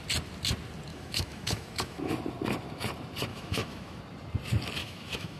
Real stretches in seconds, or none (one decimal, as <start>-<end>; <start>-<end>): 0.0-0.9; 2.1-3.3; 4.0-4.8